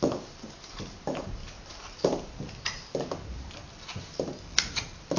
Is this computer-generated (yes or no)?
no